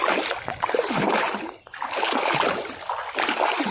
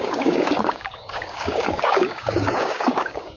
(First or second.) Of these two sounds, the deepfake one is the second